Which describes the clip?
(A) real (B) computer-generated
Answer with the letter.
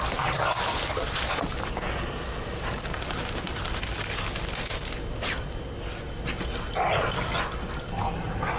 A